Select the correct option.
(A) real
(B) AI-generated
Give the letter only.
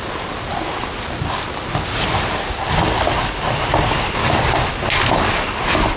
A